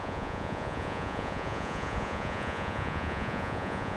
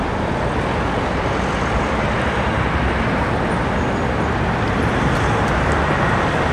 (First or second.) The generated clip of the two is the first